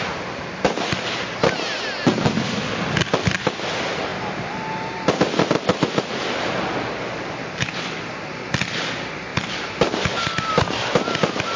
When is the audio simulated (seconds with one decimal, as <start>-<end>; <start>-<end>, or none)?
none